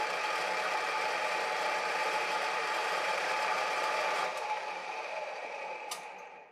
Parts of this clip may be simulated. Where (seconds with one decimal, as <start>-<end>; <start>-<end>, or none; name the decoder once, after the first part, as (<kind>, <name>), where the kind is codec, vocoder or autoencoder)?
2.0-3.3 (vocoder, BigVGAN v2); 4.8-5.9